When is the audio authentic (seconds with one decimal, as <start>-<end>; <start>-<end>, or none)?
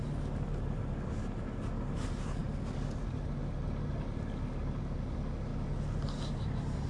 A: 0.0-6.9